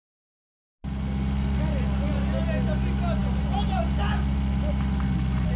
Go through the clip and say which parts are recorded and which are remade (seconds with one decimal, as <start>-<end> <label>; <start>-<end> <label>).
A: 0.0-5.6 recorded